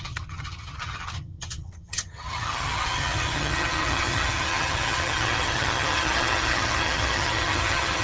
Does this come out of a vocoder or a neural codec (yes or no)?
yes